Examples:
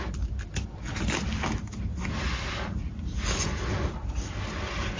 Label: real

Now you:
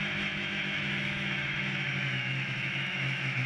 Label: fake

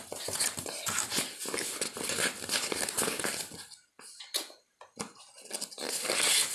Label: real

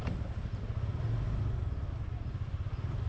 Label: real